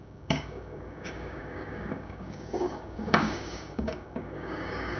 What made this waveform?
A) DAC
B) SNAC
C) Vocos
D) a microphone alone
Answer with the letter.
A